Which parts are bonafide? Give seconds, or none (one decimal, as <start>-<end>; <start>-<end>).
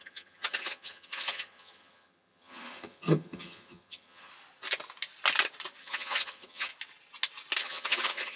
4.3-5.8; 6.7-7.6